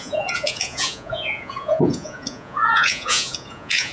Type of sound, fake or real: fake